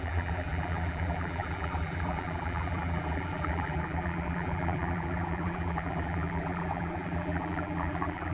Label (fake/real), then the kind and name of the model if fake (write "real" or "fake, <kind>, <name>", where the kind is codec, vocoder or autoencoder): fake, vocoder, BigVGAN v2